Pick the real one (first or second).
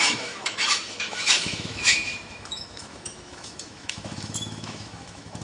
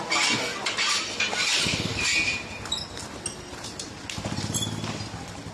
second